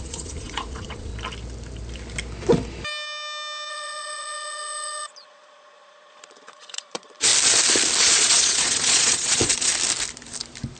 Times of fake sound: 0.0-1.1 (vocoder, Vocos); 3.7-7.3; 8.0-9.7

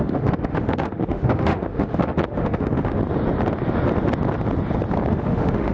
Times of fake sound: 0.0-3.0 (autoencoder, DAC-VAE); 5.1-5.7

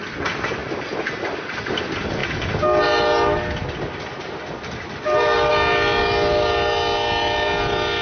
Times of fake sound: none

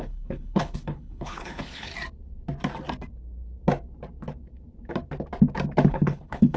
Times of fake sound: 0.0-1.9 (codec, HILCodec); 5.9-6.6